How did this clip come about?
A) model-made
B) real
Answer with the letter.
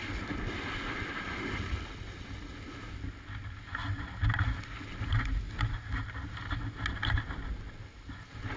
B